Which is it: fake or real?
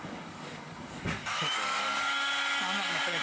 fake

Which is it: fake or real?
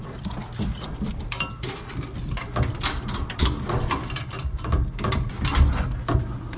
real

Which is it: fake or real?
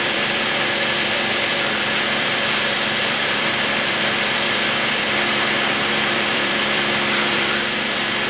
fake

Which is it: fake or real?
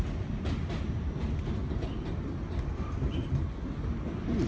real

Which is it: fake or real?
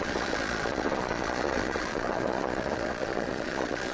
fake